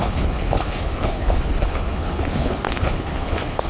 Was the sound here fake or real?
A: fake